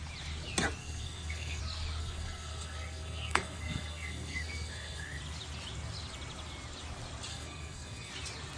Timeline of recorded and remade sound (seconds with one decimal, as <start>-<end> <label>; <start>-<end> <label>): 0.0-0.8 recorded; 0.8-1.6 remade; 1.6-2.0 recorded; 2.0-5.2 remade; 5.2-7.3 recorded; 7.3-8.1 remade; 8.1-8.6 recorded